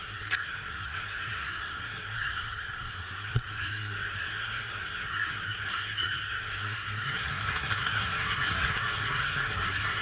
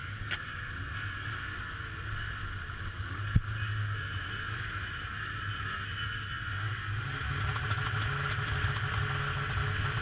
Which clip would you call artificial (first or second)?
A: first